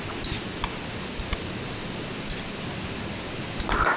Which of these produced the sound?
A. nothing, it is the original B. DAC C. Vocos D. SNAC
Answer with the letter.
A